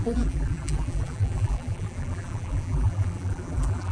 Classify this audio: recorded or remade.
remade